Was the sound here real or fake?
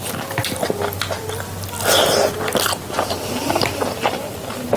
real